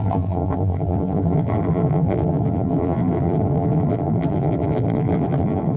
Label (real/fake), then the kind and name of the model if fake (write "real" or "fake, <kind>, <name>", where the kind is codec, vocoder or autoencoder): fake, vocoder, BigVGAN v2